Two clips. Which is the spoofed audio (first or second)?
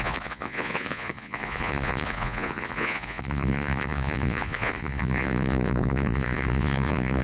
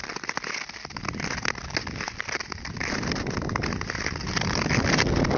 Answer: first